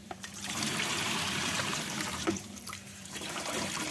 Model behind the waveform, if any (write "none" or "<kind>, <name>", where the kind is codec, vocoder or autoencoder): vocoder, BigVGAN v2